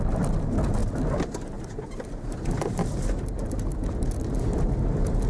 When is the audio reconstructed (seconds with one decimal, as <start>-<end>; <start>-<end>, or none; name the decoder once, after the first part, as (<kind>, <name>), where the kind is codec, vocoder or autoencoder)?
none